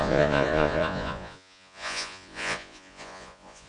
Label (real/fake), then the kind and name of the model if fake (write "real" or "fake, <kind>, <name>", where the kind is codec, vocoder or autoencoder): fake, vocoder, Vocos